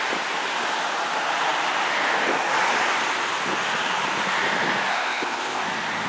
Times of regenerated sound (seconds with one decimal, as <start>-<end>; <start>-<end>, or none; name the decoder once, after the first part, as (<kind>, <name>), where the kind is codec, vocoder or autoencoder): 4.9-5.6 (codec, ZipCodec)